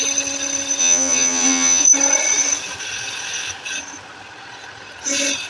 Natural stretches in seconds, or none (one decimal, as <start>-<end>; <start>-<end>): 0.0-0.8; 1.9-5.5